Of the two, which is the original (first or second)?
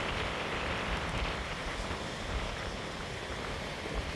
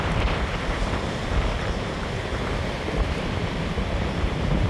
first